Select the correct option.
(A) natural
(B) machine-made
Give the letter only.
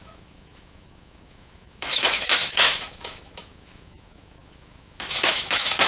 B